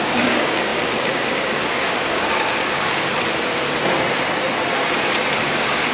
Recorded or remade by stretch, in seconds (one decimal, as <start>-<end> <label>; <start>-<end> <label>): 0.0-3.1 remade; 3.1-5.4 recorded; 5.4-5.9 remade